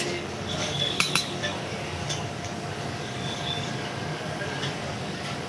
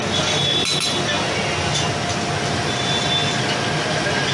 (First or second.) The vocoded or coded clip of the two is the first